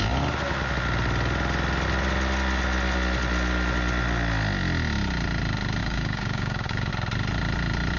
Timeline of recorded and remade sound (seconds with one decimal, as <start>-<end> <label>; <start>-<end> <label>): 0.0-5.8 recorded; 5.8-6.9 remade; 6.9-8.0 recorded